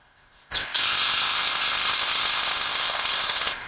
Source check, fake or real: fake